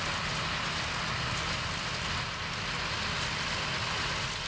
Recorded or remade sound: remade